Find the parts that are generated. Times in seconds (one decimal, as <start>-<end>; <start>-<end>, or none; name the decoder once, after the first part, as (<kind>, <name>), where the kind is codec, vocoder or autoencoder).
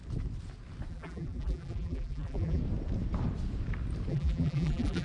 0.9-2.6 (vocoder, BigVGAN v2); 4.1-5.0